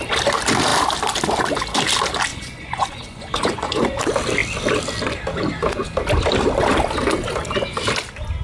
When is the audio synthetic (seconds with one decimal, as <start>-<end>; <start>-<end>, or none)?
2.3-4.0

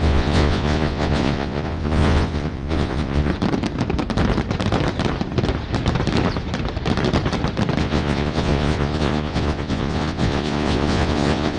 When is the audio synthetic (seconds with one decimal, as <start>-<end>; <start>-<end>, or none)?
0.0-3.3; 7.8-11.6

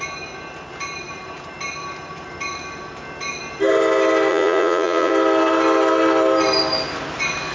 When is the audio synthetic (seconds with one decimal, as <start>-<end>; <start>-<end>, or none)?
4.3-5.1

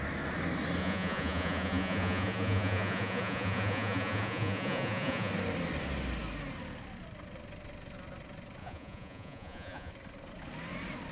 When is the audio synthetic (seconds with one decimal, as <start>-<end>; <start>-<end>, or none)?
0.8-5.3; 8.6-9.9